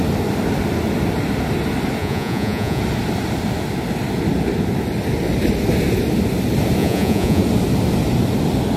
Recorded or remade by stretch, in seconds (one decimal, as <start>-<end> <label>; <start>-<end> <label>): 0.0-2.0 recorded; 2.0-2.8 remade; 2.8-6.8 recorded; 6.8-7.4 remade; 7.4-8.8 recorded